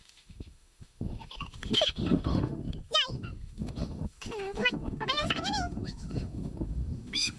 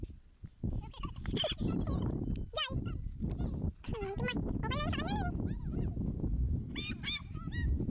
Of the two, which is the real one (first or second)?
second